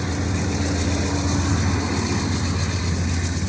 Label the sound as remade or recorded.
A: recorded